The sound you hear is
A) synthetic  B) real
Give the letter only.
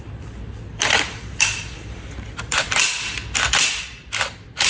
A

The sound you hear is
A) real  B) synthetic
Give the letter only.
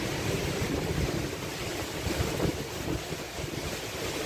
A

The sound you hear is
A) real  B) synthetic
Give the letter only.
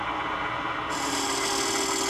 A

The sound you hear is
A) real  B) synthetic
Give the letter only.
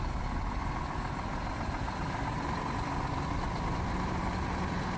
B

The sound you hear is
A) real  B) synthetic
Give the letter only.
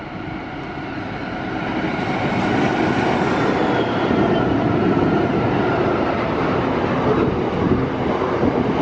A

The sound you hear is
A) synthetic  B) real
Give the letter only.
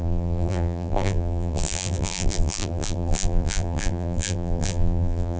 A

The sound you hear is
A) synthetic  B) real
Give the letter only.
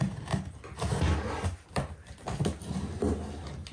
B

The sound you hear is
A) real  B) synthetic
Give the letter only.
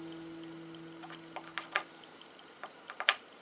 A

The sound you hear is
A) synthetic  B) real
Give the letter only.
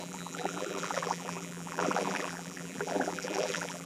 A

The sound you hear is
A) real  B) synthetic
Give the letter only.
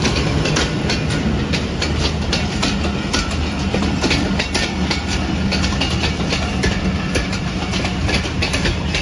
A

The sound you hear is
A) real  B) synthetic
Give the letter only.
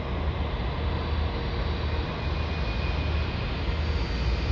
A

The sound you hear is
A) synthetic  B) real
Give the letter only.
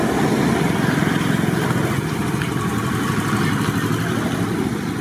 B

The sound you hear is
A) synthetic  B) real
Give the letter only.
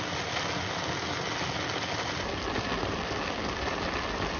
B